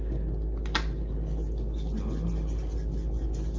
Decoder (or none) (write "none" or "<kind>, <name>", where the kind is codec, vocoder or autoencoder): none